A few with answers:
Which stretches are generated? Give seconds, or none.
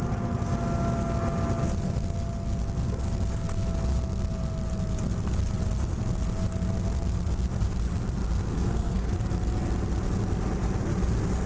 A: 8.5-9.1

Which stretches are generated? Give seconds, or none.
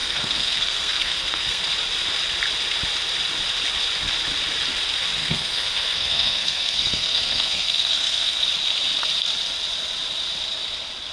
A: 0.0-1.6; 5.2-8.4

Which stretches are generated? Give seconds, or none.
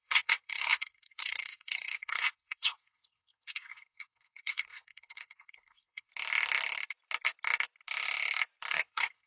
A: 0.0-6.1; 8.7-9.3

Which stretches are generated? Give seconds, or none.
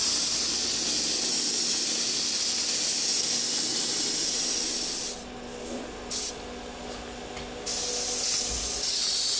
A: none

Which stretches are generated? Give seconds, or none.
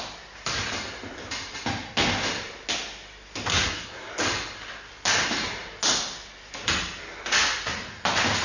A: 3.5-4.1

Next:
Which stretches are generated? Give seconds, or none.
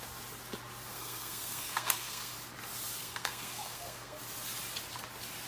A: 0.9-2.3; 3.0-4.2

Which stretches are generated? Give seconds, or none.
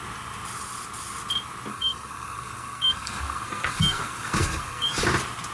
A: 1.7-5.0